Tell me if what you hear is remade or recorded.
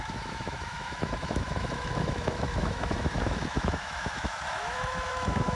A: remade